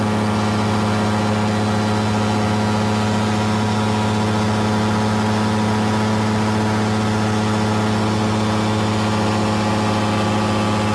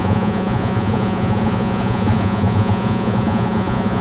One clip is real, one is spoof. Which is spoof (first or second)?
second